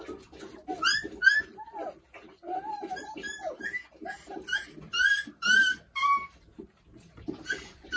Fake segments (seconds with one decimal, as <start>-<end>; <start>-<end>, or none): none